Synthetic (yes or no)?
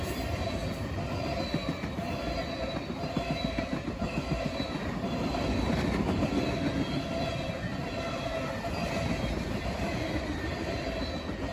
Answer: no